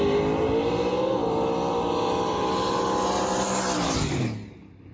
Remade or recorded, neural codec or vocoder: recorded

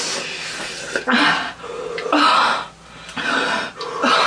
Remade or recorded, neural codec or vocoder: recorded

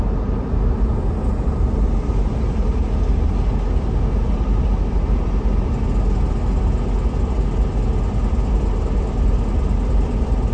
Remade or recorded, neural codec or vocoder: recorded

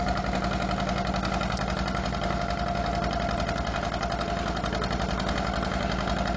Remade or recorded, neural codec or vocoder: recorded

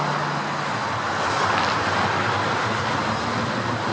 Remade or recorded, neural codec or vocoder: recorded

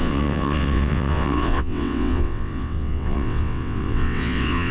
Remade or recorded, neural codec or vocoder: remade, vocoder, WaveNeXt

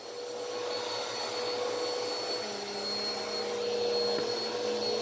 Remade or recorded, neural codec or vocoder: recorded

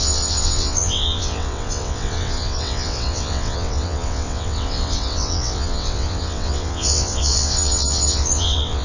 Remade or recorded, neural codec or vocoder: remade, vocoder, WaveNeXt